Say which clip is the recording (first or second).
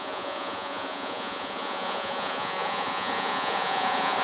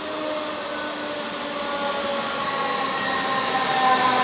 second